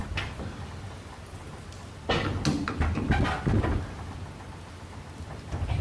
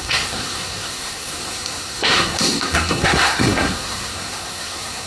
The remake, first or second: second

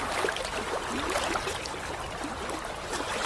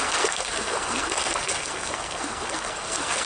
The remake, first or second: second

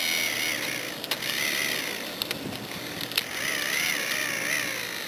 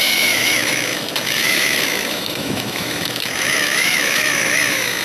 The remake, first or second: second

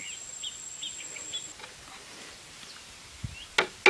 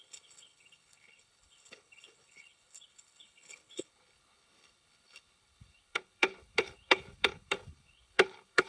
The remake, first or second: second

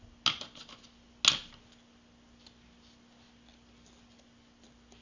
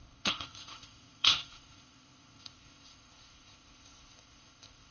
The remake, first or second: second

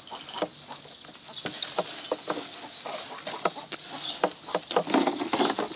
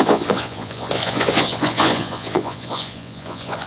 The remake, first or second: second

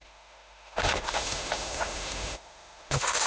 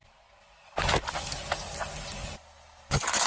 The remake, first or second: first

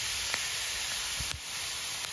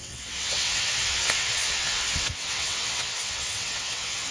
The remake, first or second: second